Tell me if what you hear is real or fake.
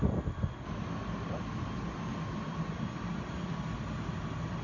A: real